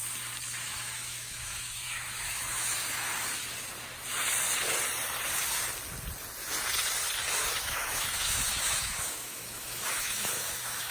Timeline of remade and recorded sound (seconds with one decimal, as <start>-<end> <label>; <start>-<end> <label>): 0.0-0.6 recorded; 0.6-3.1 remade; 3.1-7.3 recorded; 7.3-10.9 remade